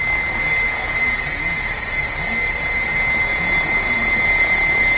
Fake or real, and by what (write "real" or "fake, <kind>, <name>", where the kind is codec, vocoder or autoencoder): real